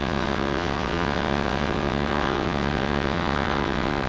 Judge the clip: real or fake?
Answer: fake